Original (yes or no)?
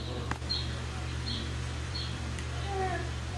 no